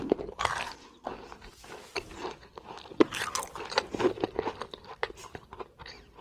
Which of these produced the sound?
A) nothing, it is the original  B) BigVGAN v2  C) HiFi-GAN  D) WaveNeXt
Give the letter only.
A